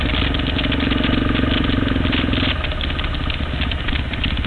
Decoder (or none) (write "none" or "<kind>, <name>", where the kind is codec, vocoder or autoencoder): none